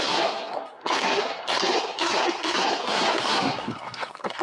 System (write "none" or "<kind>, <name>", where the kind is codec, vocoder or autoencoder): codec, SNAC